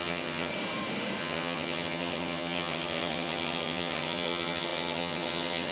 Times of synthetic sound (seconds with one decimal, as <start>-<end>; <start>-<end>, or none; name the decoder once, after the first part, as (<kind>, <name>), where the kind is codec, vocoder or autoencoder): 0.0-0.5 (vocoder, HiFi-GAN); 1.2-5.7